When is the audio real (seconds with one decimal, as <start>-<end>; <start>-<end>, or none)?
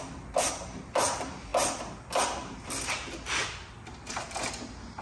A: 0.0-5.0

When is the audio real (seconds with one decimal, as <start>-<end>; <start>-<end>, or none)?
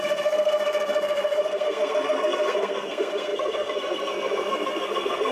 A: none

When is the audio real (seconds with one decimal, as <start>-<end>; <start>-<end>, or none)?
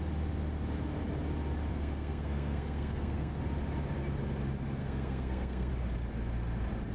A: 0.0-1.7; 3.4-4.8; 5.7-6.9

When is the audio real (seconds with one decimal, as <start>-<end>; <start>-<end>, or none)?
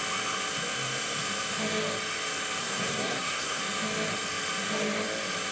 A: 0.0-2.6; 3.6-5.5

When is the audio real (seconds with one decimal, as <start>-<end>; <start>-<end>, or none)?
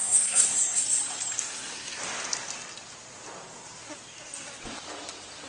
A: 0.8-1.4; 2.0-5.5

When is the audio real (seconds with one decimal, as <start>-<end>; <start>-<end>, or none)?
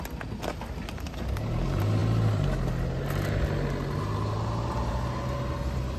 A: 0.0-6.0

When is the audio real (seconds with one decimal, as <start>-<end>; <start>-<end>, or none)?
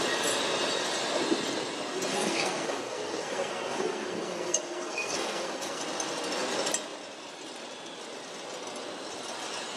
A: 0.0-2.1; 5.8-9.8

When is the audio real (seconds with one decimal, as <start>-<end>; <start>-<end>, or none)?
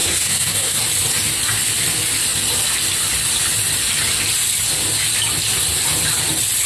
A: 0.8-6.7